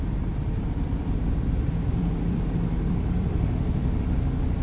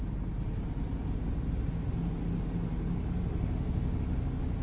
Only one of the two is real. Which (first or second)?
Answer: second